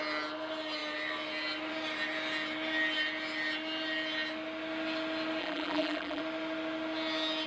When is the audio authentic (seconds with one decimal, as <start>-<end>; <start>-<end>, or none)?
0.0-5.4; 6.2-7.5